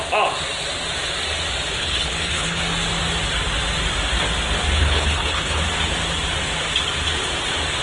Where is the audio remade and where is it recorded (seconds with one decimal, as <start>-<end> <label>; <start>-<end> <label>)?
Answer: 0.0-1.7 recorded; 1.7-2.6 remade; 2.6-4.8 recorded; 4.8-5.6 remade; 5.6-7.8 recorded